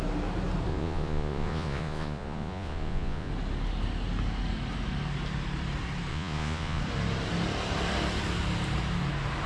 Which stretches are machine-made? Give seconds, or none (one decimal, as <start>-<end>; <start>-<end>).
0.7-3.3; 6.1-6.8